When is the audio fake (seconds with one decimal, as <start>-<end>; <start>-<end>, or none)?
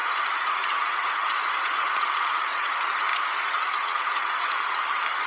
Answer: 0.0-2.7; 3.1-4.8